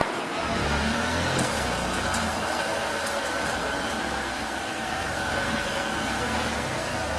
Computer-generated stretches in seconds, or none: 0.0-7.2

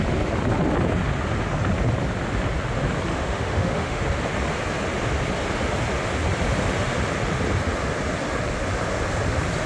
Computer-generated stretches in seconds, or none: 3.1-4.0

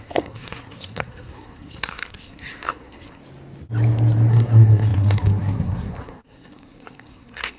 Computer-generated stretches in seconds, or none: 0.0-3.2; 4.3-7.6

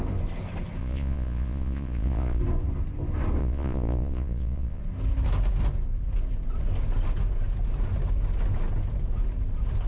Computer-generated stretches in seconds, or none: 0.8-2.4; 3.4-4.8

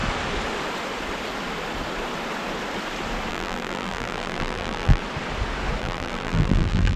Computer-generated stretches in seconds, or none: 3.3-5.0; 5.8-7.0

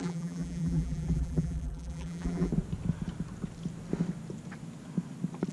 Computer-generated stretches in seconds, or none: 0.0-2.5